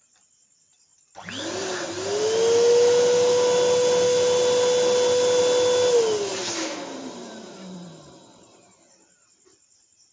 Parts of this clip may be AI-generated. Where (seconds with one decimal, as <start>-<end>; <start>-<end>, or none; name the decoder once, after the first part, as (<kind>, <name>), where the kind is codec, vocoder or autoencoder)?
6.3-8.9 (vocoder, BigVGAN v2)